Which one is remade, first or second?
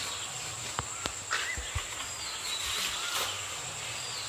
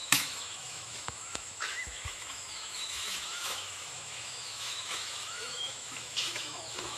second